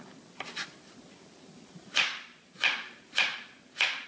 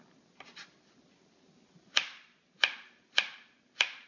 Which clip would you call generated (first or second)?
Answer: first